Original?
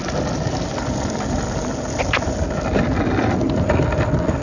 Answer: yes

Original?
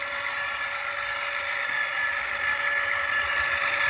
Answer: yes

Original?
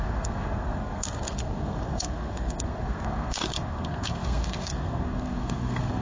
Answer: no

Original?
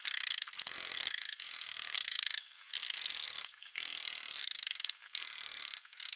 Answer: no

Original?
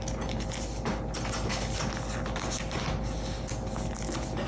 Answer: yes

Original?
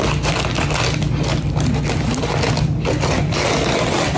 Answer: yes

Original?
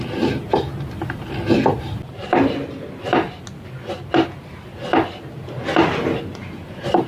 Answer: yes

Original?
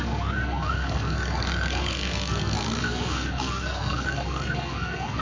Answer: no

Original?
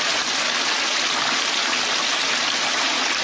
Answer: yes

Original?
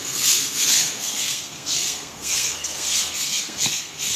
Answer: no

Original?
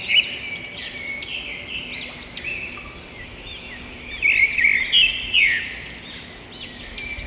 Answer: yes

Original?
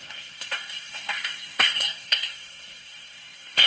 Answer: no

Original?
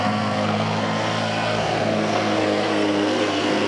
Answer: no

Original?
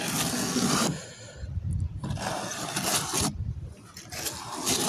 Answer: yes